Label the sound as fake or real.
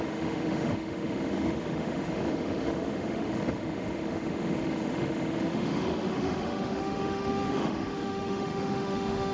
fake